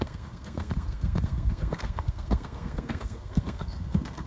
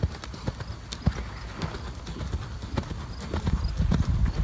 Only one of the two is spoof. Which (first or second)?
first